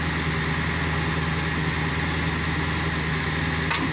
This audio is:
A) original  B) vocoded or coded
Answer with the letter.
A